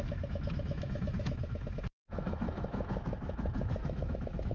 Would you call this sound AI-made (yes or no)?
yes